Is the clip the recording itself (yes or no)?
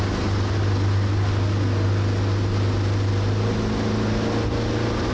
yes